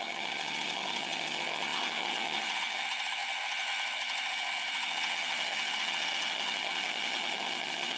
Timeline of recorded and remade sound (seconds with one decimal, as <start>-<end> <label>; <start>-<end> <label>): 0.0-8.0 remade

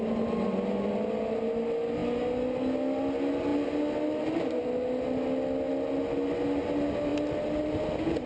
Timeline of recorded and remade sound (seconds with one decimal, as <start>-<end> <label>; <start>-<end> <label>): 0.0-8.3 recorded

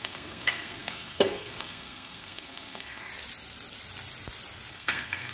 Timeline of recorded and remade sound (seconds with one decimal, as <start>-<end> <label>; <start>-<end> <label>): 0.0-3.1 remade; 3.1-4.7 recorded; 4.7-5.3 remade

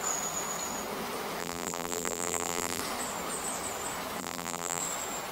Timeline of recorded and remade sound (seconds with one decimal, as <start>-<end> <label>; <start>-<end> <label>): 0.0-1.4 recorded; 1.4-2.8 remade; 2.8-4.2 recorded; 4.2-4.8 remade; 4.8-5.3 recorded

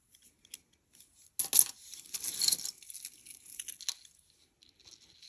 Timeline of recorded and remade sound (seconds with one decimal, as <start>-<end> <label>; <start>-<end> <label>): 0.0-5.3 recorded